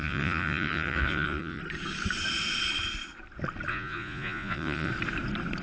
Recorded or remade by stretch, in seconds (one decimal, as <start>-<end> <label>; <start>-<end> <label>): 0.0-1.6 remade; 1.6-3.7 recorded; 3.7-4.9 remade; 4.9-5.6 recorded